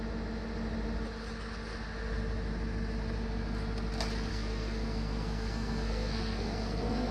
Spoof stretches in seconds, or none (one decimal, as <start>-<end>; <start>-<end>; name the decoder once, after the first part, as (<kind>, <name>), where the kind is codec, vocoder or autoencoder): 4.3-7.1 (codec, SNAC)